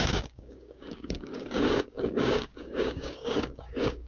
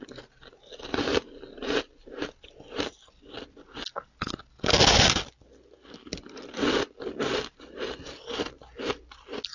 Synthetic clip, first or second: first